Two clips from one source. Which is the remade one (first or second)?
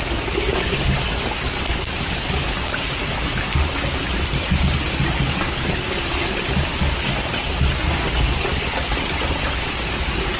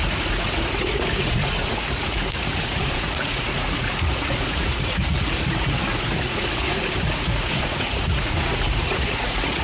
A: second